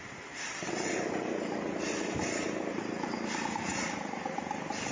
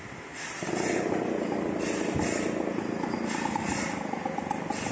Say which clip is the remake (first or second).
first